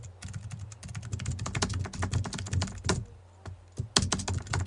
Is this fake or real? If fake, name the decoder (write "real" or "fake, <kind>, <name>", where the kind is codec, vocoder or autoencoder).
real